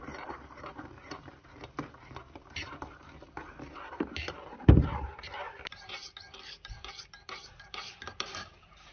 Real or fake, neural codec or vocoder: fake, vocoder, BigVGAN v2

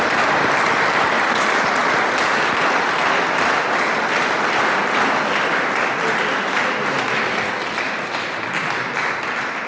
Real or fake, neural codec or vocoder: real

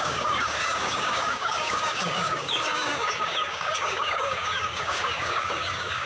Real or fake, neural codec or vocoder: fake, codec, DAC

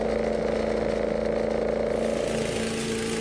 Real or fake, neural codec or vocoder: real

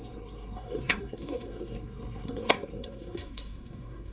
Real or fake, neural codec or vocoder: fake, codec, SNAC